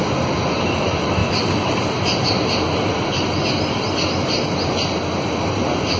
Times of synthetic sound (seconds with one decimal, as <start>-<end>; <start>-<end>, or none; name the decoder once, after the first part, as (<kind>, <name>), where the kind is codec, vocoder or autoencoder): none